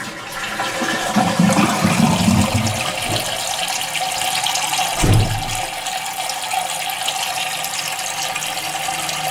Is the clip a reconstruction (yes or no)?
no